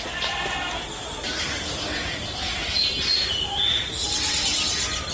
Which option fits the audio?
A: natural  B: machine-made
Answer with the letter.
A